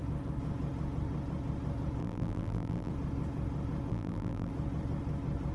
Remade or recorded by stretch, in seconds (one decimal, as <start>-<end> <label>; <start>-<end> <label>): 0.0-2.0 recorded; 2.0-2.9 remade; 2.9-3.9 recorded; 3.9-4.5 remade; 4.5-5.5 recorded